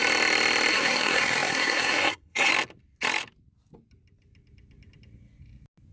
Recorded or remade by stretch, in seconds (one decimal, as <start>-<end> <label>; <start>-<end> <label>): 0.0-0.7 recorded; 0.7-2.5 remade; 2.5-5.9 recorded